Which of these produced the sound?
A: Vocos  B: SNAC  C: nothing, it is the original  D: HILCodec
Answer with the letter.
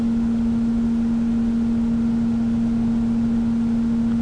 C